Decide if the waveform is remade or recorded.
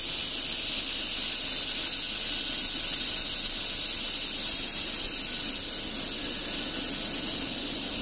recorded